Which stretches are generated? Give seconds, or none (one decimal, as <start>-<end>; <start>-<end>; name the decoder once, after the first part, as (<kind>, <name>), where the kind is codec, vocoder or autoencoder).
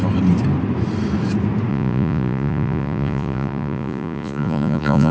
1.7-5.1 (vocoder, Vocos)